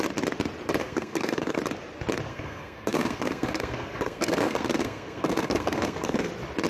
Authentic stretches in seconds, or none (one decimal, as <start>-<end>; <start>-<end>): 0.0-0.8; 1.6-2.3; 6.3-6.7

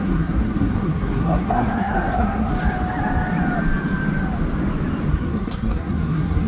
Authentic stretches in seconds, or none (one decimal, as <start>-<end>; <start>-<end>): 2.5-5.1

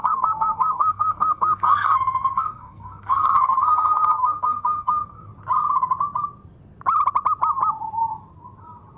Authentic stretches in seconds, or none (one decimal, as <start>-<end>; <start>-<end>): 5.3-9.0

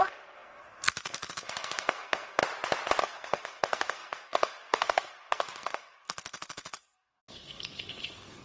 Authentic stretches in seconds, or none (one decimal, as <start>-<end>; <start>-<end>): 2.4-3.0

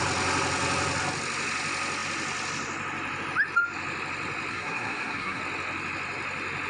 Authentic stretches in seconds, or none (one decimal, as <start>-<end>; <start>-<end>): 0.0-4.5; 5.4-6.7

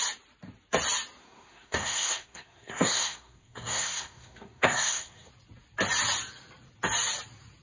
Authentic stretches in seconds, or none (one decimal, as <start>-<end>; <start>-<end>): 0.0-1.2; 5.3-7.6

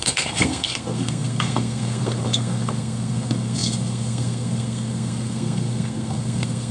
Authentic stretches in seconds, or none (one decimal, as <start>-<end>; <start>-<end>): none

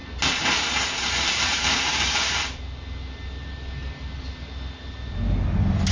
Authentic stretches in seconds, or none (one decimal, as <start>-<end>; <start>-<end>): 0.0-5.9